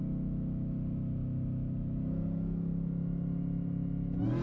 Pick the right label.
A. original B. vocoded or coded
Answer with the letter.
A